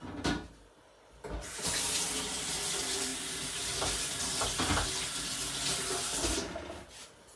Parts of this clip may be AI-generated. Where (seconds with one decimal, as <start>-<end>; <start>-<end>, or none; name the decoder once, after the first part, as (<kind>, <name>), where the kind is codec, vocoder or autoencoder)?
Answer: 3.1-4.2 (vocoder, BigVGAN v2)